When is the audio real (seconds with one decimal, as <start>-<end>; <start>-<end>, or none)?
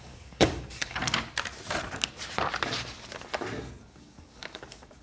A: 1.0-3.8